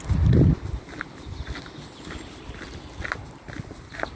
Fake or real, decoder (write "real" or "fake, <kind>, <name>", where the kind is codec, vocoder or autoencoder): real